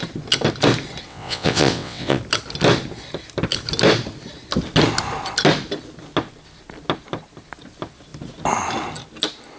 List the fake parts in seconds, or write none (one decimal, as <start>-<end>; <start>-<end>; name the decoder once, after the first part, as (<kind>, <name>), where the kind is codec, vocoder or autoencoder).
1.1-2.2 (vocoder, WaveNeXt)